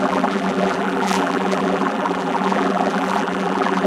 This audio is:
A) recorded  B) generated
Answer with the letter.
B